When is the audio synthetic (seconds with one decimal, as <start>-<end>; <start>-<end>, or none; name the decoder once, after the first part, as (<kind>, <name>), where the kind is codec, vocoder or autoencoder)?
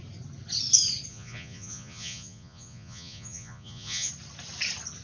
1.1-4.1 (vocoder, Vocos)